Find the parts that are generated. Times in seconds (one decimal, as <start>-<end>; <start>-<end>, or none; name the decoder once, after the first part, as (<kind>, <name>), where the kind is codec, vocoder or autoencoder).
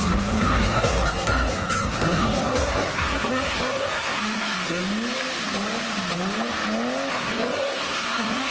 0.0-4.8 (codec, SNAC); 7.1-8.5